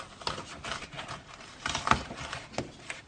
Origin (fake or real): real